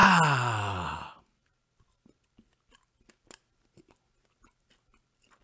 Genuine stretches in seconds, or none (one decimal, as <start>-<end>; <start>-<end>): 0.0-5.4